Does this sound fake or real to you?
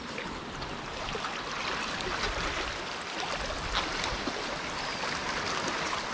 real